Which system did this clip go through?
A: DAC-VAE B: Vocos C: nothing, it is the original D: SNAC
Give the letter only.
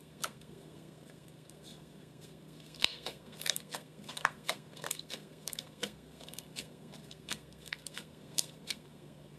D